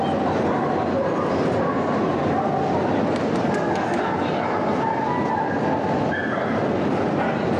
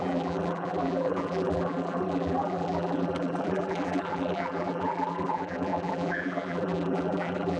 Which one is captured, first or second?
first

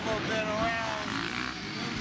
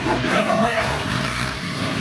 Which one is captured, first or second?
first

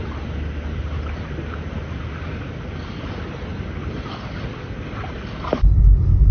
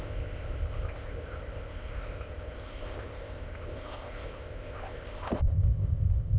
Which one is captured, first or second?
first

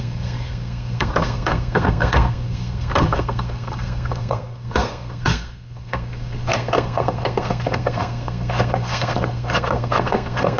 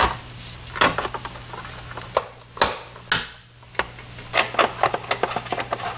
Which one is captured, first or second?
second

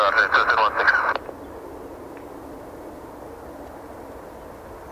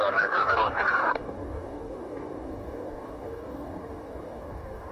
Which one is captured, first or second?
first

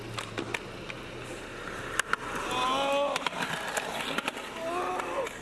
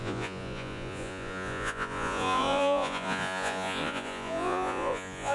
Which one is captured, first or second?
first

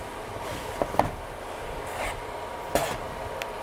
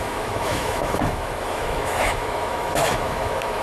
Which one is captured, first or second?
first